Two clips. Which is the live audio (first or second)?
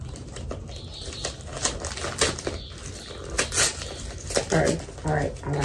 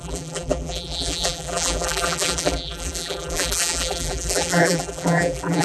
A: first